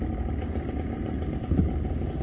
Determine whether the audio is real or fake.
real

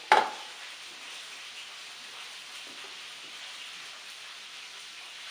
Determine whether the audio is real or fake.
real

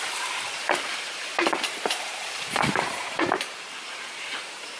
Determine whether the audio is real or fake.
fake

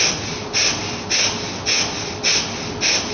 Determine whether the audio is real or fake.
real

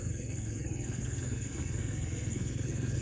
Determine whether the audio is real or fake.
fake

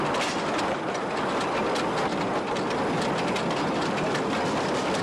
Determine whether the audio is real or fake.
real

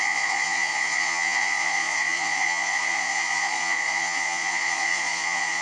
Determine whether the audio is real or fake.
fake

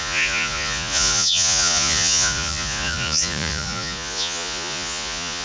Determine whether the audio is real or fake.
fake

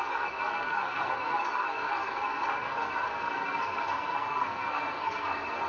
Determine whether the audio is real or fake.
fake